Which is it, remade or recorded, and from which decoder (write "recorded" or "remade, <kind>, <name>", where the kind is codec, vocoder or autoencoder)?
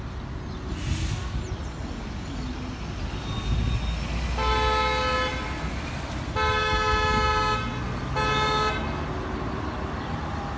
recorded